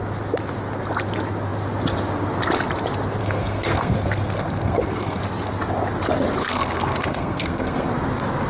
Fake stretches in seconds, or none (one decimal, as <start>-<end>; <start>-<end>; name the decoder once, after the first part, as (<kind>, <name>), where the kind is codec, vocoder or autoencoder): 3.2-5.2 (codec, SNAC); 6.4-7.9